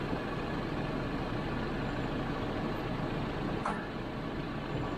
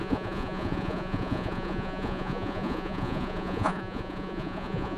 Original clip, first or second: first